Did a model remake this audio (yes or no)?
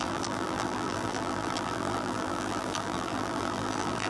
yes